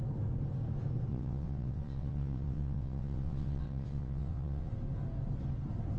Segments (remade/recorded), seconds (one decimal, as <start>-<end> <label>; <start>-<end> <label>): 0.0-1.1 recorded; 1.1-4.7 remade; 4.7-6.0 recorded